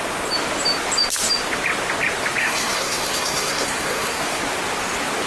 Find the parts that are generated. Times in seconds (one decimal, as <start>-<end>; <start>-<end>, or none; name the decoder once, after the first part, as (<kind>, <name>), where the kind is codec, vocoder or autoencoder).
2.4-4.4 (codec, SNAC)